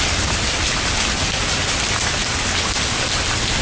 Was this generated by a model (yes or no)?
no